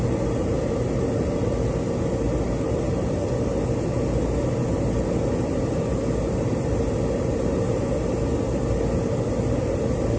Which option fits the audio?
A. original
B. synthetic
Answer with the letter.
A